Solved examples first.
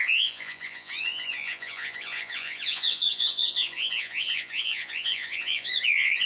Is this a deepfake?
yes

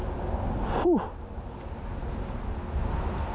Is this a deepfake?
no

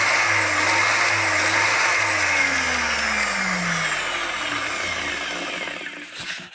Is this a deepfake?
no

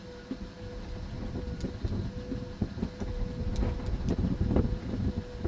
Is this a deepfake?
no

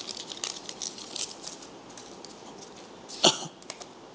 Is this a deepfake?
no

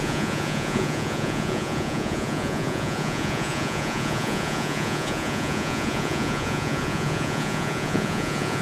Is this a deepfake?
yes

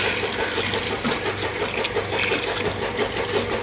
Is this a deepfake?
no